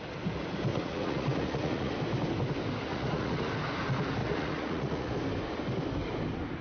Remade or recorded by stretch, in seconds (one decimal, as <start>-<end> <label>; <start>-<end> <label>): 0.0-0.7 recorded; 0.7-1.9 remade; 1.9-2.9 recorded; 2.9-3.5 remade; 3.5-4.2 recorded; 4.2-5.1 remade; 5.1-6.6 recorded